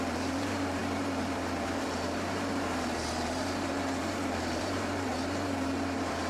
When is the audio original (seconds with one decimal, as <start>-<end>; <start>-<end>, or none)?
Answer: none